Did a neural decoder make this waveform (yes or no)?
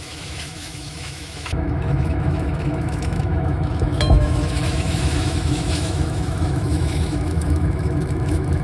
yes